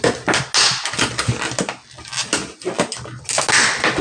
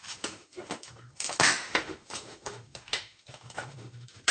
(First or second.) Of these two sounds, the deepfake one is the second